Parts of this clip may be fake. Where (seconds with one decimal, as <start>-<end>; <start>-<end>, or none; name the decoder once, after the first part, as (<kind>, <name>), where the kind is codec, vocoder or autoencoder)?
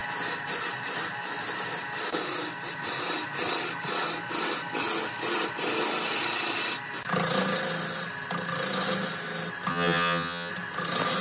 9.7-10.5 (vocoder, HiFi-GAN)